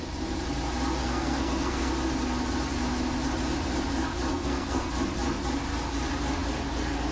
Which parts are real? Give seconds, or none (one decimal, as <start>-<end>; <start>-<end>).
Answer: 0.0-1.0; 1.9-4.3; 4.9-7.1